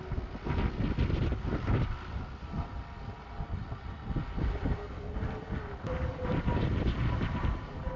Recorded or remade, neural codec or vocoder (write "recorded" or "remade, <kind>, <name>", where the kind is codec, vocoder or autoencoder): recorded